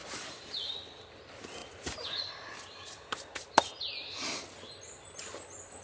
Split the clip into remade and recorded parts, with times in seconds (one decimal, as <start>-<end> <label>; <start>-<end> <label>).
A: 0.0-5.8 recorded